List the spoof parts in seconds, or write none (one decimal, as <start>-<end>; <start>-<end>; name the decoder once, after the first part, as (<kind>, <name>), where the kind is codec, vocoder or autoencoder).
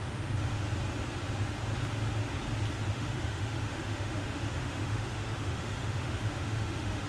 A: 0.0-0.6 (autoencoder, DAC-VAE); 2.9-7.1